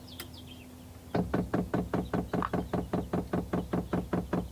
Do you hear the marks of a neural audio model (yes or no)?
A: no